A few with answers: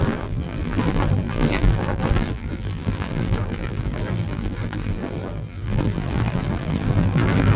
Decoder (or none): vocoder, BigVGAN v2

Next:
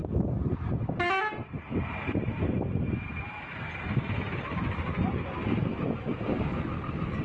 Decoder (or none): none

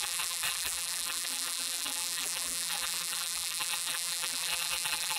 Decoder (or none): vocoder, BigVGAN v2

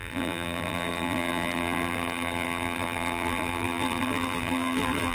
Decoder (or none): vocoder, BigVGAN v2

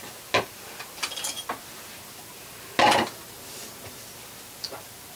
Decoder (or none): none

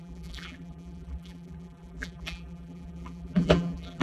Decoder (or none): vocoder, BigVGAN v2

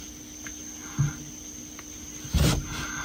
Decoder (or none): none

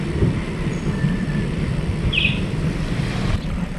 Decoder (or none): vocoder, BigVGAN v2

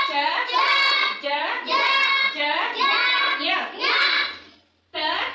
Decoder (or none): none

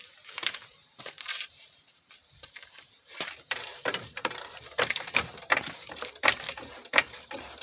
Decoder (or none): vocoder, BigVGAN v2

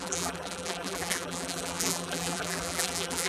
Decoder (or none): vocoder, BigVGAN v2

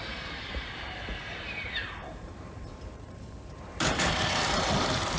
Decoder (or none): vocoder, BigVGAN v2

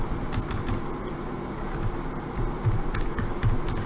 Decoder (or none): none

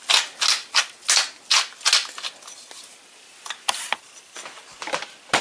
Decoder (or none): none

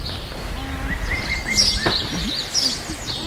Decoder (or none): none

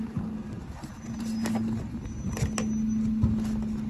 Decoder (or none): none